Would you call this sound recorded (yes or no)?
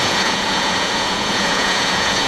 no